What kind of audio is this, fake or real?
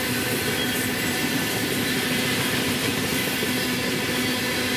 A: real